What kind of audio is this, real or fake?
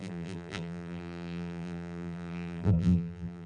fake